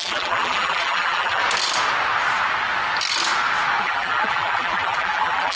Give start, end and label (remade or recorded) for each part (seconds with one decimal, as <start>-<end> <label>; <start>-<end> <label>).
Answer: 0.0-1.4 remade; 1.4-3.8 recorded; 3.8-5.6 remade